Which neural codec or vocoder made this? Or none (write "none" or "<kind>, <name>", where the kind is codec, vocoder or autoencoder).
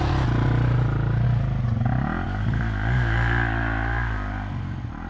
none